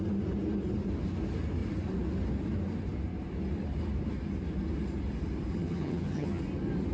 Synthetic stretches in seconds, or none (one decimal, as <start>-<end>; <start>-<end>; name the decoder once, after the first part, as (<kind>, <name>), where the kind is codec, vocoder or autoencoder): 5.5-6.4 (vocoder, HiFi-GAN)